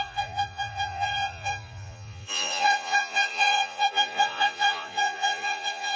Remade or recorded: remade